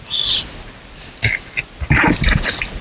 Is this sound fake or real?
real